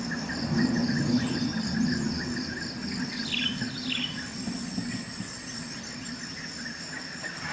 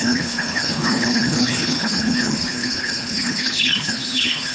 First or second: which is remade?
second